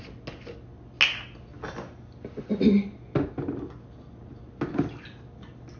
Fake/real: real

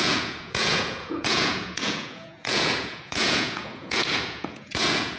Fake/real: fake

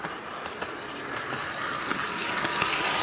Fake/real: real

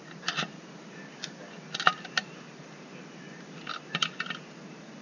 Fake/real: real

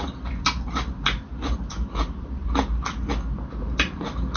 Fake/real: real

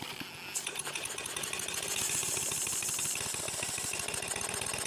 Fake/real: real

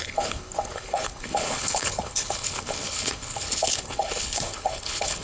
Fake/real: fake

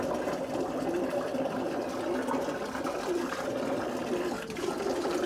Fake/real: real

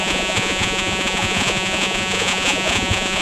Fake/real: fake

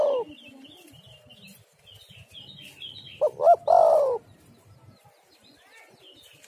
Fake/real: real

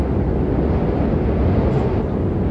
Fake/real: real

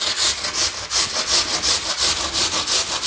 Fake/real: real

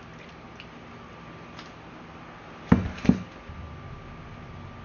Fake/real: real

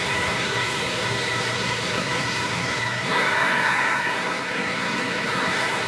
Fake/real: fake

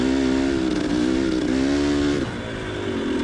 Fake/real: real